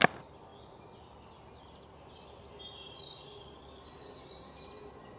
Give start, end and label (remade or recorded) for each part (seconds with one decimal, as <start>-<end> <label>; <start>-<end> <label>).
0.0-5.2 recorded